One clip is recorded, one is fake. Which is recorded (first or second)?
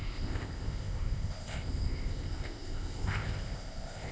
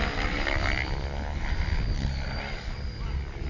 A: second